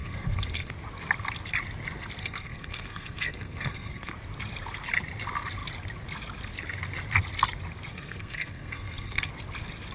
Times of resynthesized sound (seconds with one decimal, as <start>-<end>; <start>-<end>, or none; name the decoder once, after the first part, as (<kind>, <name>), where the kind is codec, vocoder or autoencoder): 0.0-0.7 (codec, SNAC); 2.2-4.1; 7.9-9.3